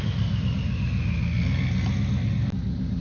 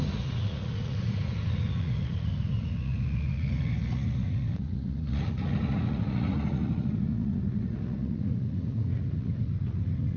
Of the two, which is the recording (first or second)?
first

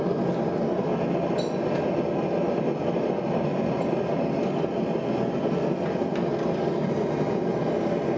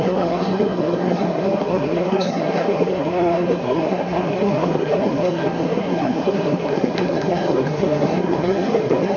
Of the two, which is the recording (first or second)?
first